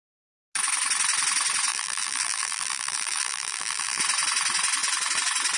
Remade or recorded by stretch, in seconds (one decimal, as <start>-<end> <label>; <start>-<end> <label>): 0.0-1.7 recorded; 1.7-4.0 remade; 4.0-5.6 recorded